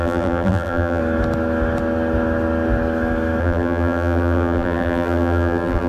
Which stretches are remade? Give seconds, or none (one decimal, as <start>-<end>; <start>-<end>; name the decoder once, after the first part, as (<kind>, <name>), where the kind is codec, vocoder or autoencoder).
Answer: 0.0-1.0 (vocoder, BigVGAN v2); 3.4-5.9